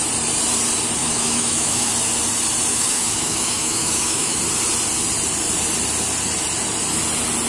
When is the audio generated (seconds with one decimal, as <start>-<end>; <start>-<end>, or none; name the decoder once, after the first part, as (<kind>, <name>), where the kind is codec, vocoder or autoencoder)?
1.0-1.9 (autoencoder, DAC-VAE); 2.7-4.4